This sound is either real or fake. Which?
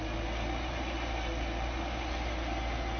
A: real